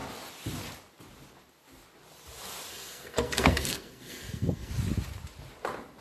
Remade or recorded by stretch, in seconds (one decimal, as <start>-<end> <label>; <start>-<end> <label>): 0.0-2.7 recorded; 2.7-4.7 remade; 4.7-6.0 recorded